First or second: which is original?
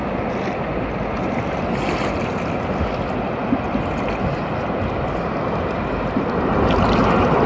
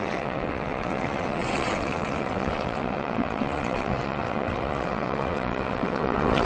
first